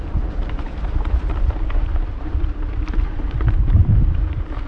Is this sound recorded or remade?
remade